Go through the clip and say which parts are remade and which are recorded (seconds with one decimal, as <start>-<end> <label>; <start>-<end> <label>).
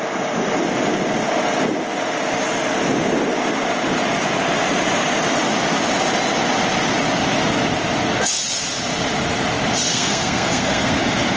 0.0-9.9 recorded; 9.9-11.0 remade; 11.0-11.4 recorded